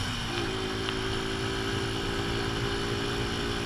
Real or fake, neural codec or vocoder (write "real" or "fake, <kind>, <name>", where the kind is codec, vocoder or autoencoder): real